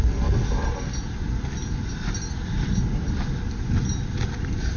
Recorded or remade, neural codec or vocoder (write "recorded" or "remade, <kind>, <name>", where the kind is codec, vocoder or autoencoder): recorded